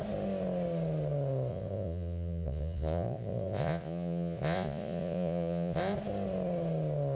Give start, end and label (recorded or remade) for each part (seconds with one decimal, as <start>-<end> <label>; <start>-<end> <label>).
0.0-1.5 recorded; 1.5-5.8 remade; 5.8-7.2 recorded